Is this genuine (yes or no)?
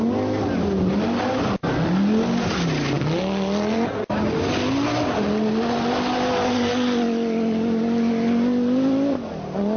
yes